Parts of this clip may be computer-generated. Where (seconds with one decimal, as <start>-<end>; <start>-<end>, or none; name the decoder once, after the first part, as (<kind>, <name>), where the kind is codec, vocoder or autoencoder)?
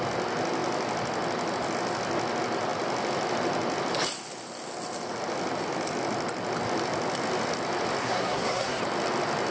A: 8.0-8.8 (codec, SNAC)